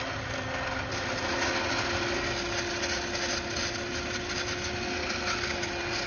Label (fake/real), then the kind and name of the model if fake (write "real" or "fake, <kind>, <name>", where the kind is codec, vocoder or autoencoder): real